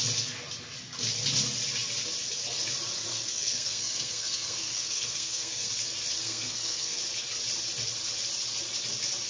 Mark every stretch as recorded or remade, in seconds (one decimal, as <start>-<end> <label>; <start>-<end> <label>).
0.0-3.1 recorded; 3.1-5.7 remade; 5.7-6.2 recorded; 6.2-7.0 remade; 7.0-9.3 recorded